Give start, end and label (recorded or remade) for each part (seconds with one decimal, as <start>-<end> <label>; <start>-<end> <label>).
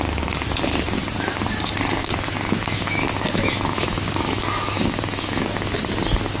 0.0-2.0 recorded; 2.0-5.8 remade; 5.8-6.4 recorded